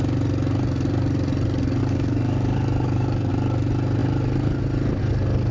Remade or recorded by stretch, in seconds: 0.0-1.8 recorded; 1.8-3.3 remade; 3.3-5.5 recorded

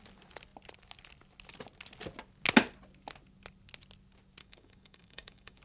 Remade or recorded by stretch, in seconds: 0.0-4.4 recorded; 4.4-5.6 remade

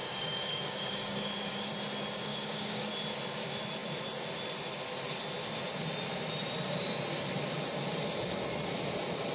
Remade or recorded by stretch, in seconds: 0.0-1.7 remade; 1.7-2.3 recorded; 2.3-2.9 remade; 2.9-9.3 recorded

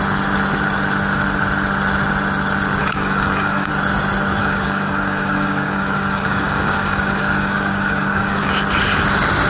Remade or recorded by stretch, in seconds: 0.0-2.8 recorded; 2.8-3.7 remade; 3.7-4.4 recorded; 4.4-8.5 remade; 8.5-9.5 recorded

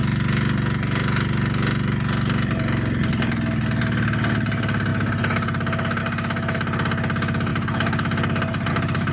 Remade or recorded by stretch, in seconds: 0.0-9.1 recorded